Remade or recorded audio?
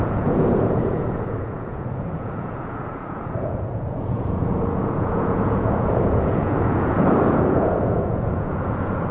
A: remade